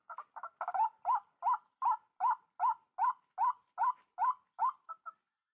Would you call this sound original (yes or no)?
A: yes